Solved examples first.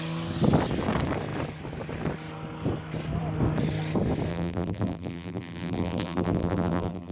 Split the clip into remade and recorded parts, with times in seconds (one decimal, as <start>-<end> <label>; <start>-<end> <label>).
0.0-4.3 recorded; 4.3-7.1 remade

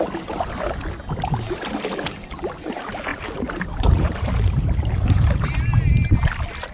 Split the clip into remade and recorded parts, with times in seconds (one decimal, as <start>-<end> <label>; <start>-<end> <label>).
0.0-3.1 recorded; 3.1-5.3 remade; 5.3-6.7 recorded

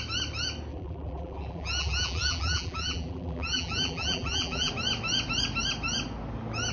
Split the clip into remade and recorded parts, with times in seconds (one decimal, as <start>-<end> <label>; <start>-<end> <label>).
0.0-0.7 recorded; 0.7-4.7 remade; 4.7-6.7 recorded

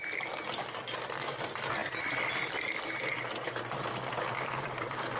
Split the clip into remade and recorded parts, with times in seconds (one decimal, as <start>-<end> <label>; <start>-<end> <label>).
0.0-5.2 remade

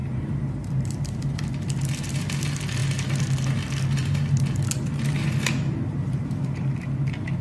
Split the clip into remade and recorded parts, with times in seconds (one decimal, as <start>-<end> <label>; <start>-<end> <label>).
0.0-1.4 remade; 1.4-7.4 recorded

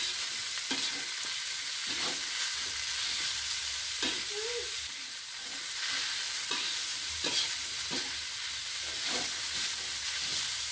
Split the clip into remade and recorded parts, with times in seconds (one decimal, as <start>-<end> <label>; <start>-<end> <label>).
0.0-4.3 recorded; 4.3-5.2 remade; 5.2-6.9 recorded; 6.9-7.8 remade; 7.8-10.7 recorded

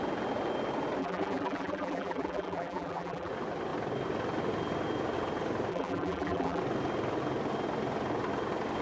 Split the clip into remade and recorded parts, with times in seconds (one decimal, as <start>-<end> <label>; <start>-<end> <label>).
0.0-1.0 recorded; 1.0-3.3 remade; 3.3-5.7 recorded; 5.7-6.6 remade; 6.6-8.8 recorded

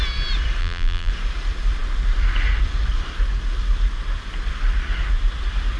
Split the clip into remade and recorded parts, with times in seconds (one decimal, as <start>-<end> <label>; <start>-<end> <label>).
0.0-0.6 recorded; 0.6-1.1 remade; 1.1-5.8 recorded